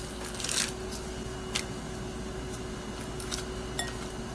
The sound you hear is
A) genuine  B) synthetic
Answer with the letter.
A